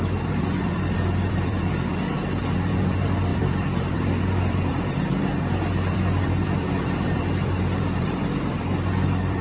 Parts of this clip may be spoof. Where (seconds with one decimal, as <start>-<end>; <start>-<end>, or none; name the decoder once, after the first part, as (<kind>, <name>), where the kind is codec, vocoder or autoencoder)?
0.0-9.4 (vocoder, BigVGAN v2)